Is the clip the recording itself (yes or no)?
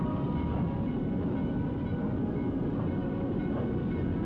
yes